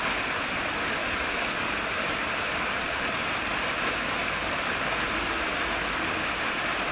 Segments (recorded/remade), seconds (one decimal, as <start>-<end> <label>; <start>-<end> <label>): 0.0-6.9 recorded